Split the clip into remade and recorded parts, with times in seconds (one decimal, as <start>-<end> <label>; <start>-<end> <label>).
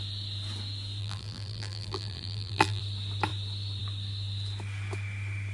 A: 0.0-1.0 recorded; 1.0-2.8 remade; 2.8-5.5 recorded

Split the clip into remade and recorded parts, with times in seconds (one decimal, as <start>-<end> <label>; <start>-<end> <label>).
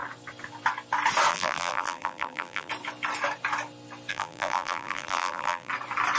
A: 0.0-1.3 recorded; 1.3-2.7 remade; 2.7-4.1 recorded; 4.1-5.7 remade; 5.7-6.2 recorded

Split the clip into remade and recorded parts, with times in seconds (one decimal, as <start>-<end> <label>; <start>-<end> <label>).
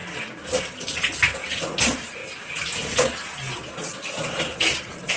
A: 0.0-1.8 recorded; 1.8-2.2 remade; 2.2-5.2 recorded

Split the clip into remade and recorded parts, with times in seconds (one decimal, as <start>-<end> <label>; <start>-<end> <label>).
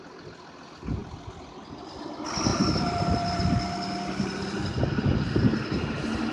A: 0.0-2.5 recorded; 2.5-3.4 remade; 3.4-6.3 recorded